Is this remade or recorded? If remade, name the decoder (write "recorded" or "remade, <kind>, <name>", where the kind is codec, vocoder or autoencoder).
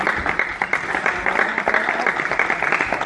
recorded